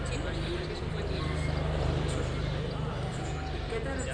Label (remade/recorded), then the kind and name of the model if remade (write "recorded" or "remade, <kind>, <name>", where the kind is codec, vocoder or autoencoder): recorded